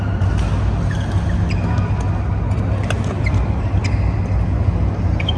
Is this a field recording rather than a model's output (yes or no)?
yes